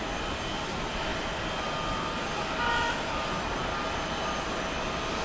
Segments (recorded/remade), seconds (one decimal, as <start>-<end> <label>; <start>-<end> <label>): 0.0-5.2 recorded